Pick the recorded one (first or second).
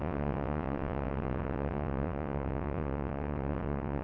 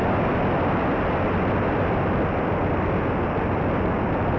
second